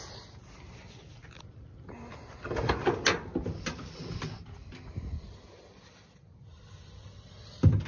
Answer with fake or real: real